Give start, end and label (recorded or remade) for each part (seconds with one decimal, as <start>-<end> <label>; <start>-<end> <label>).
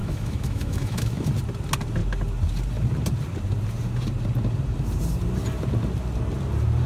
0.0-1.3 remade; 1.3-6.9 recorded